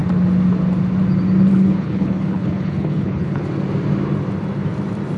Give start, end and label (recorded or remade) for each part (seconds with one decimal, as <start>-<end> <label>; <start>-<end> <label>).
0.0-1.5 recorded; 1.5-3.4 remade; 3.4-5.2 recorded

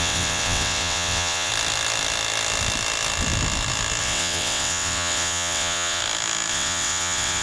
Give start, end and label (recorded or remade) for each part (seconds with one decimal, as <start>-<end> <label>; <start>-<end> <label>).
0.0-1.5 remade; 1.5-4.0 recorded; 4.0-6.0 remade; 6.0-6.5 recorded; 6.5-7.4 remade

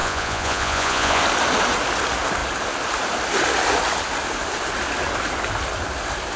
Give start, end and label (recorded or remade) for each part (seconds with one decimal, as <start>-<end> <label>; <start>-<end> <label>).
0.0-1.2 remade; 1.2-6.4 recorded

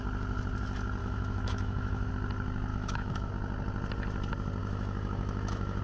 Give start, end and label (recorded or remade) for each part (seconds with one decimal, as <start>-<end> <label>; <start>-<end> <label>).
0.0-1.0 recorded; 1.0-2.1 remade; 2.1-2.7 recorded; 2.7-3.3 remade; 3.3-4.6 recorded; 4.6-5.8 remade

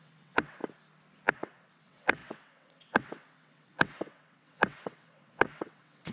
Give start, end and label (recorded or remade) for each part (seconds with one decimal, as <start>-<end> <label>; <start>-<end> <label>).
0.0-0.6 remade; 0.6-1.3 recorded; 1.3-6.1 remade